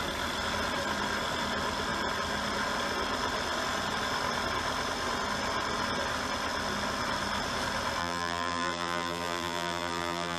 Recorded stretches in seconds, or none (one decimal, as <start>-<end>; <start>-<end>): 0.0-8.0